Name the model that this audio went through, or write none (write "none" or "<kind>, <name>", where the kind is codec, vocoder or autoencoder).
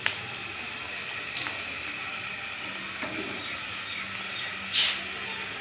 none